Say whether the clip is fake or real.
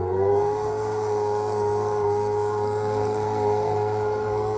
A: fake